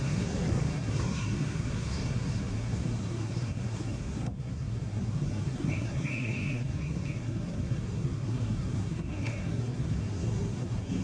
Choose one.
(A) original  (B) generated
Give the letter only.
B